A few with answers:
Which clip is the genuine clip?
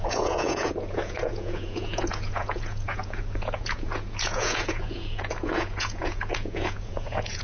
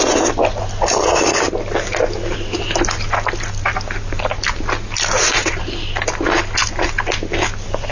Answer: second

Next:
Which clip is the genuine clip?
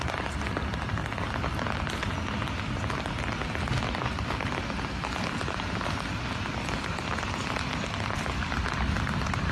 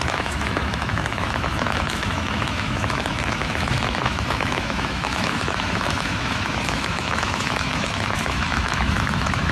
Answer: first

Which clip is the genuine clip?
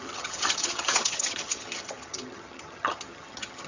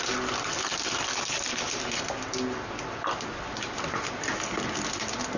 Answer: second